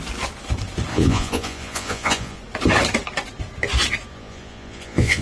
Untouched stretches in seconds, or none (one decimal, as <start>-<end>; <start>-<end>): 0.0-0.9; 2.4-4.1